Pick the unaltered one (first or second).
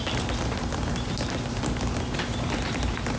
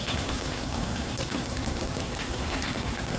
first